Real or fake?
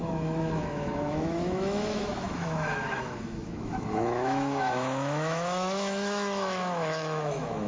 fake